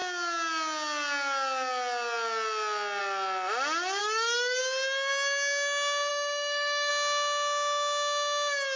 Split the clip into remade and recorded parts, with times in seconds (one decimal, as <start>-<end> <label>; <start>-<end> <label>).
0.0-4.0 recorded; 4.0-4.6 remade; 4.6-6.1 recorded; 6.1-6.9 remade; 6.9-8.8 recorded